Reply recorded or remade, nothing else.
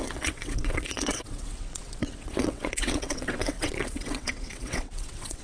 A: remade